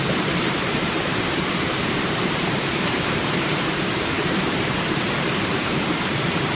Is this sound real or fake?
fake